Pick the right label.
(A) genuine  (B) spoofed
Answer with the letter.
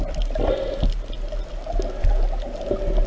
A